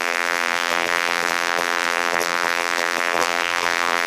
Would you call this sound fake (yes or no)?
yes